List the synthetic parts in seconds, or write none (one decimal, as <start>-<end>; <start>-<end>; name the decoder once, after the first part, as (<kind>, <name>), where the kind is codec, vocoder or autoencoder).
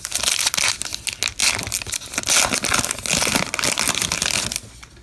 none